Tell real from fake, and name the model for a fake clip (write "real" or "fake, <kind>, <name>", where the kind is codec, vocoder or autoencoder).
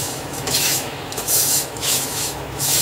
fake, autoencoder, DAC-VAE